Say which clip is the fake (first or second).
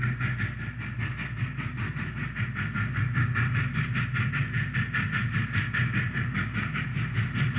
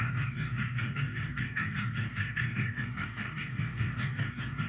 second